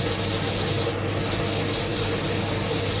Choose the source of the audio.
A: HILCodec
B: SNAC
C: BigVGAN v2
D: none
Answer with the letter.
D